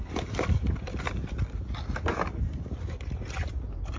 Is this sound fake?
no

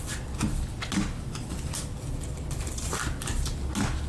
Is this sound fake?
no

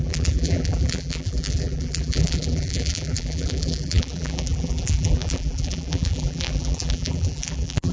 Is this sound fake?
yes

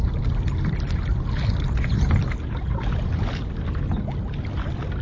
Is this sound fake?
no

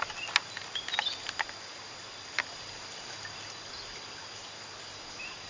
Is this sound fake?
no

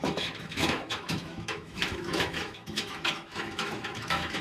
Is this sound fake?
yes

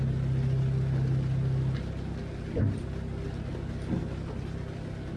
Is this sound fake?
no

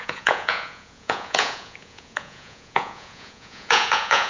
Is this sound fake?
yes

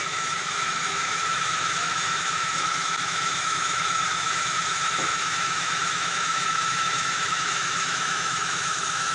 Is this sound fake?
yes